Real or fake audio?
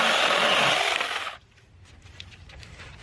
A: real